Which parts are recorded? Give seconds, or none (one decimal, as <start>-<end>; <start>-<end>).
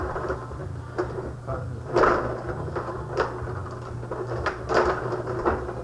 0.6-2.6